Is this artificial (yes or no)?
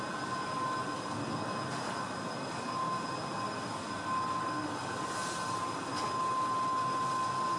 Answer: no